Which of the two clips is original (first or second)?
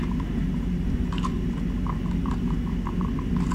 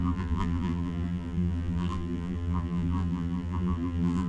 first